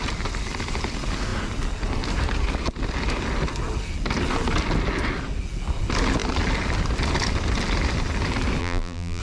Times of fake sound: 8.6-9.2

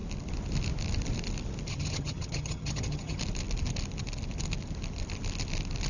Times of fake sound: 1.7-3.2

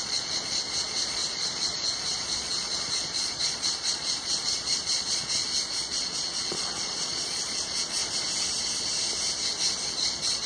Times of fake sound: 0.0-5.4; 5.9-8.0; 9.9-10.5

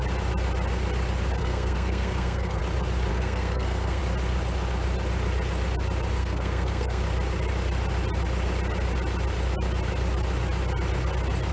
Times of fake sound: 1.4-2.6; 3.1-4.0; 6.2-7.0

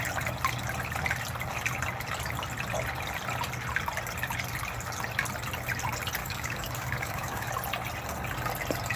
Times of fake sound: 6.2-7.5

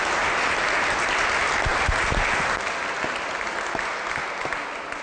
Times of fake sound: none